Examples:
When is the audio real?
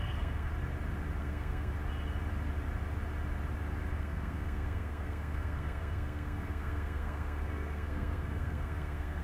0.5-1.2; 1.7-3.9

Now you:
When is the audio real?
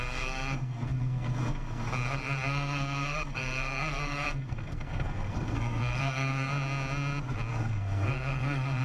6.5-7.5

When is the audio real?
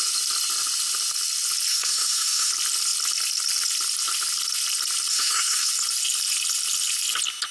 0.0-1.7; 2.5-5.1; 5.7-7.5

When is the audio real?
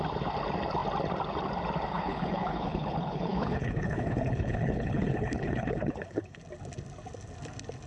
0.0-1.9; 6.4-7.9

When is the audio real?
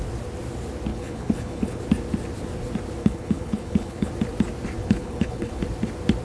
0.0-0.9; 1.8-3.0; 4.1-4.8; 5.6-6.2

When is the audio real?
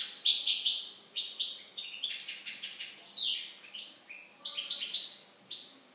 0.0-0.7; 1.8-5.9